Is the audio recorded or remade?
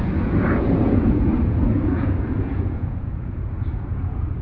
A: remade